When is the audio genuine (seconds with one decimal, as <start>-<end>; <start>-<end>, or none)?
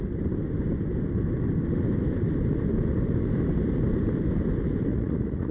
0.0-4.9